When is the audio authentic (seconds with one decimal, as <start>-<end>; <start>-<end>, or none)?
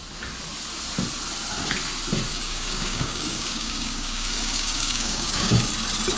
0.0-2.3; 5.7-6.2